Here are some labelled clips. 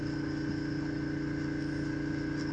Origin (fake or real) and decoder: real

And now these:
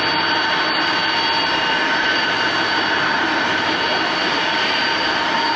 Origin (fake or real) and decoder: fake, vocoder, BigVGAN v2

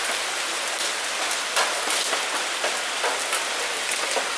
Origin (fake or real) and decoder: real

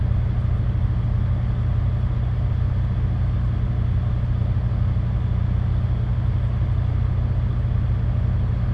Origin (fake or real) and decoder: real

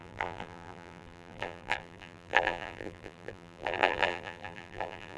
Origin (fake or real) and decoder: fake, vocoder, BigVGAN v2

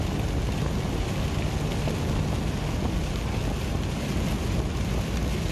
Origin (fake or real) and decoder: real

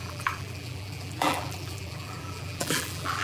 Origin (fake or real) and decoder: fake, vocoder, BigVGAN v2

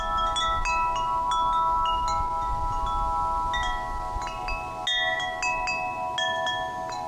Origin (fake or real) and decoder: real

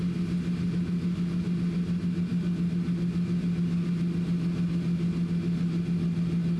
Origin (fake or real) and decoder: real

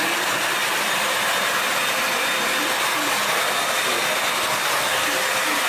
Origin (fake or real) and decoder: real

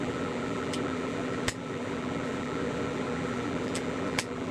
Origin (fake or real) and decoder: fake, vocoder, BigVGAN v2